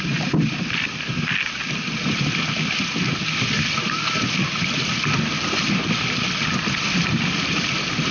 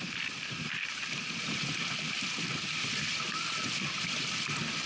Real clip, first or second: first